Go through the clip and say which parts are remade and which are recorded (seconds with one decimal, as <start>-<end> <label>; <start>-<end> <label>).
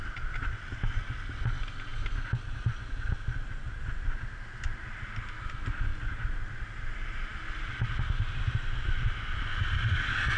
0.0-10.4 recorded